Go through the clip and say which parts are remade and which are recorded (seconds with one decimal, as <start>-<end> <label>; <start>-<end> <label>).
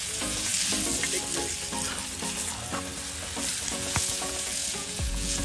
0.0-0.5 remade; 0.5-3.7 recorded; 3.7-5.4 remade